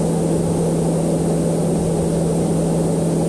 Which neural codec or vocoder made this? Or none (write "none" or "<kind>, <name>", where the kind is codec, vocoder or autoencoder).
none